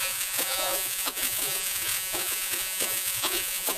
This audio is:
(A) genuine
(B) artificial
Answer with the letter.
B